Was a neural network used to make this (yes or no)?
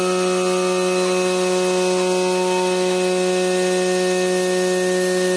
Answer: no